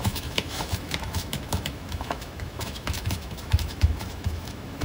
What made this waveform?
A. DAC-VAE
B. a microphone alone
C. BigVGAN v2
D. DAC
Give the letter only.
A